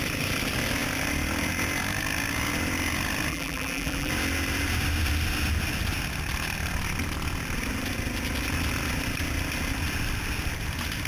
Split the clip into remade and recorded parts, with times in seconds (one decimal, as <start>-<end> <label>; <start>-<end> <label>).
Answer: 0.0-3.3 recorded; 3.3-4.1 remade; 4.1-11.1 recorded